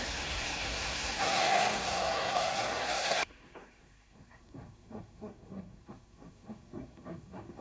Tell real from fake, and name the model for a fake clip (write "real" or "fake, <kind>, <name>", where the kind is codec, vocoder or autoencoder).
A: fake, codec, SNAC